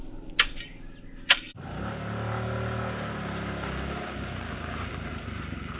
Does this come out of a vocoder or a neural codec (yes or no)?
no